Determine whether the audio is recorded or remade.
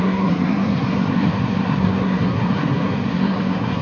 remade